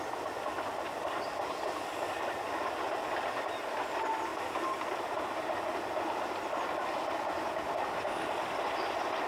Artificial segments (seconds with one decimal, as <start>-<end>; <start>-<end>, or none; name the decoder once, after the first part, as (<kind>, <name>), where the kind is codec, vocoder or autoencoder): none